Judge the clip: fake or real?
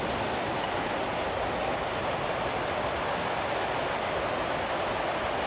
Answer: real